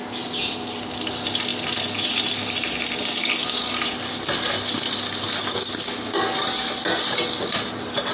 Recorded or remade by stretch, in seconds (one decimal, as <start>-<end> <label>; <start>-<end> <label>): 0.0-1.5 recorded; 1.5-5.2 remade; 5.2-8.1 recorded

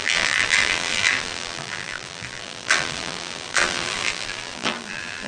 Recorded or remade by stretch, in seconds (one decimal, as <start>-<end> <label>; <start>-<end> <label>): 0.0-5.3 remade